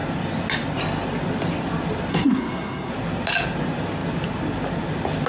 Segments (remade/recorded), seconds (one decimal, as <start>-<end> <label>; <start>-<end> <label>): 0.0-2.1 recorded; 2.1-2.9 remade; 2.9-5.3 recorded

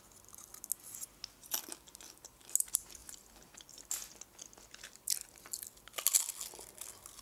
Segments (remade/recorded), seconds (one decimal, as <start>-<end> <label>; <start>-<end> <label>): 0.0-7.2 recorded

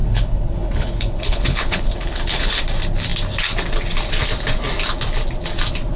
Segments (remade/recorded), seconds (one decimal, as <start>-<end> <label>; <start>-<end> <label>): 0.0-2.6 remade; 2.6-6.0 recorded

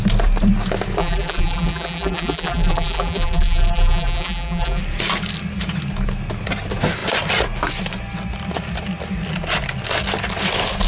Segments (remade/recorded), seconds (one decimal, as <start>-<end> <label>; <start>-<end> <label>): 0.0-1.0 recorded; 1.0-4.8 remade; 4.8-10.9 recorded

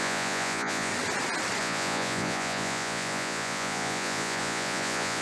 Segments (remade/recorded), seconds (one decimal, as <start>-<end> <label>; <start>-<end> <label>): 0.0-0.9 remade; 0.9-1.6 recorded; 1.6-5.2 remade

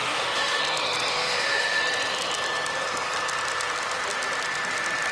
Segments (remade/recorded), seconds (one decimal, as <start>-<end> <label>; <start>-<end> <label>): 0.0-0.6 remade; 0.6-1.1 recorded; 1.1-1.8 remade; 1.8-5.1 recorded